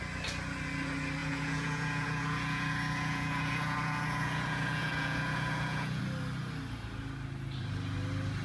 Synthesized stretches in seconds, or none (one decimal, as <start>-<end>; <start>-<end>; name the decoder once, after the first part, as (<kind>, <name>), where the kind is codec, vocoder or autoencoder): 1.2-6.0 (vocoder, Vocos)